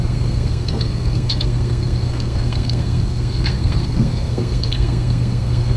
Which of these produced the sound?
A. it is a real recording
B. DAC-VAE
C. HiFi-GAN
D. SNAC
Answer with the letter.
D